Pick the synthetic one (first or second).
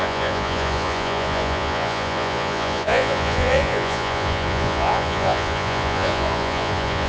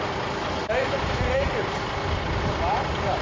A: first